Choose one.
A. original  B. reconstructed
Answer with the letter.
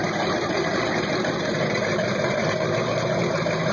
B